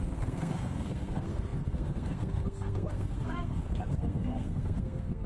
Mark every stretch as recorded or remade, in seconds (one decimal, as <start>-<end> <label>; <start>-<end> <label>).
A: 0.0-5.3 remade